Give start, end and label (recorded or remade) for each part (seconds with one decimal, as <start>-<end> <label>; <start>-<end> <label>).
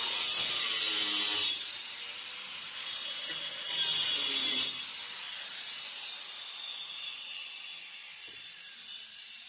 0.0-9.5 recorded